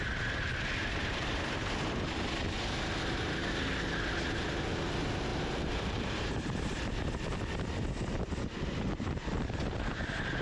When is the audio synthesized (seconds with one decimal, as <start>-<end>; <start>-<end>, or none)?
5.3-6.9